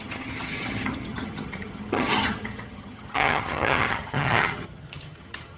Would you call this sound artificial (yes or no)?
yes